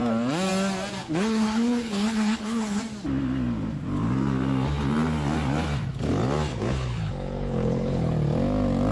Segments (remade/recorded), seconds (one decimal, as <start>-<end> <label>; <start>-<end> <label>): 0.0-1.0 recorded; 1.0-2.8 remade; 2.8-6.5 recorded; 6.5-8.1 remade; 8.1-8.9 recorded